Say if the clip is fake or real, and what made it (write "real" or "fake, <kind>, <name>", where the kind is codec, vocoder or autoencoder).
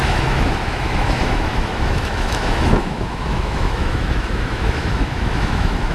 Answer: fake, autoencoder, DAC-VAE